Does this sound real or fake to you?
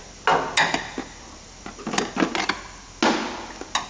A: real